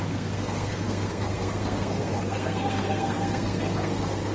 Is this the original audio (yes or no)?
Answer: no